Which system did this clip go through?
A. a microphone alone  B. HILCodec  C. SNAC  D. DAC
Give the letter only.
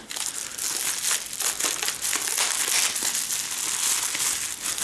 A